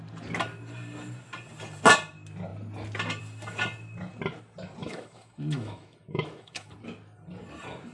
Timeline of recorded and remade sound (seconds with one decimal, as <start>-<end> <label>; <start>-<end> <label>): 0.0-4.8 recorded; 4.8-6.7 remade; 6.7-7.9 recorded